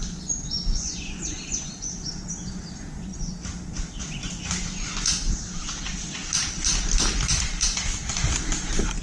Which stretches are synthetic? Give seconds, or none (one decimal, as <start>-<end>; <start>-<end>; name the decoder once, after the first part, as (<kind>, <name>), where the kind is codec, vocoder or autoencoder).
0.0-3.1 (vocoder, Vocos); 4.0-5.2